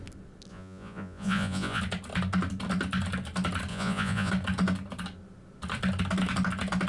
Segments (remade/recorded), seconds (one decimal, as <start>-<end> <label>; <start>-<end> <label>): 0.0-0.5 recorded; 0.5-1.8 remade; 1.8-3.7 recorded; 3.7-4.3 remade; 4.3-6.9 recorded